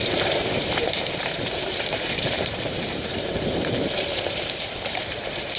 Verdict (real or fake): fake